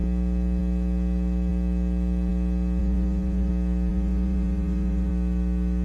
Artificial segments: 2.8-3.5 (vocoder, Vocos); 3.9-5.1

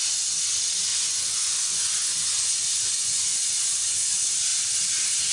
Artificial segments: 0.9-4.1 (vocoder, Vocos)

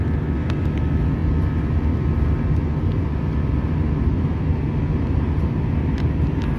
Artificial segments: none

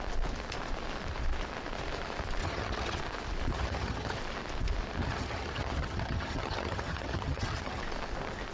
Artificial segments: 2.4-3.0 (vocoder, HiFi-GAN); 3.5-4.2; 5.0-7.8

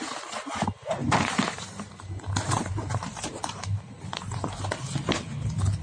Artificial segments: 1.0-3.9 (vocoder, BigVGAN v2)